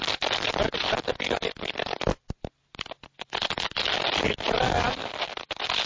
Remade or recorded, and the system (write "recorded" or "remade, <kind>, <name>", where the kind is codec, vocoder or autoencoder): recorded